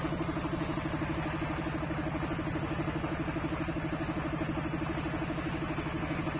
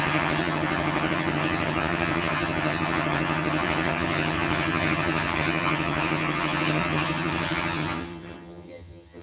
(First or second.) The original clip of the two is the first